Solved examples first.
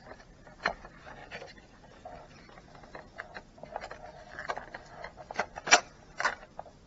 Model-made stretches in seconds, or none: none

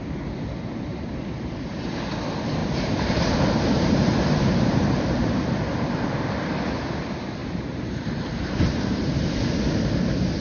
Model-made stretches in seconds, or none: 0.9-1.9 (vocoder, BigVGAN v2); 2.6-6.6; 7.4-9.4

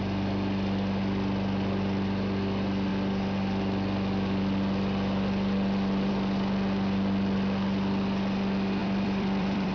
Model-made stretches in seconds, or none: 8.8-9.7 (vocoder, BigVGAN v2)

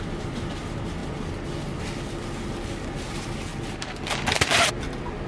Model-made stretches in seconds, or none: 0.0-1.0 (vocoder, BigVGAN v2); 3.0-3.5; 4.7-5.3

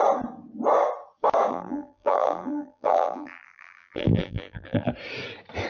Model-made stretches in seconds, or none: 1.5-4.9 (vocoder, BigVGAN v2)

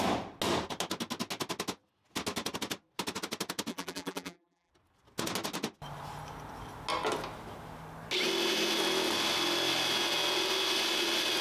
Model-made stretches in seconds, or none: 3.7-4.7 (vocoder, BigVGAN v2)